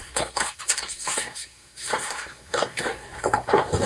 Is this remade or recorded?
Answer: remade